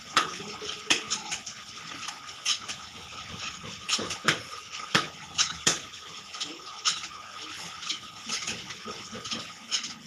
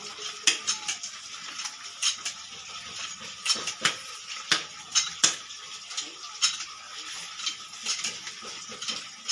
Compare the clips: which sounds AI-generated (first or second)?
first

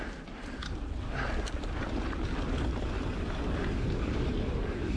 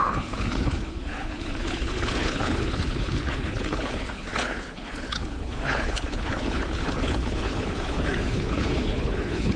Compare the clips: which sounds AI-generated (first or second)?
second